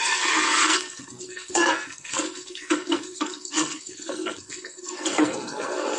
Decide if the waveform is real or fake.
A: fake